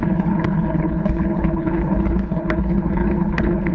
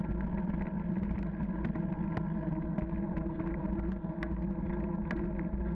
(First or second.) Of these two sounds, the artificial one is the first